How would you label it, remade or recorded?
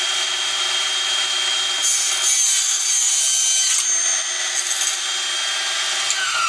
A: recorded